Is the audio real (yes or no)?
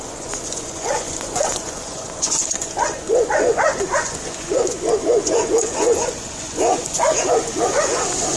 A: no